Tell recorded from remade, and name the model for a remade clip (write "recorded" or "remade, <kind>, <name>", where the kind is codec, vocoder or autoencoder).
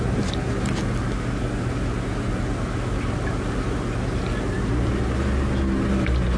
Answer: recorded